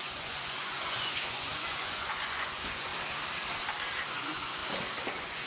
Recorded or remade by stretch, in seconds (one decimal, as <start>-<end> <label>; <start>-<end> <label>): 0.0-2.9 remade; 2.9-4.1 recorded; 4.1-4.6 remade; 4.6-5.1 recorded; 5.1-5.5 remade